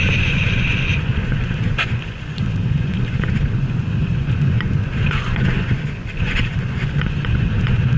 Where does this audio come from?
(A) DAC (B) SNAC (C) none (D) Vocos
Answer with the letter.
D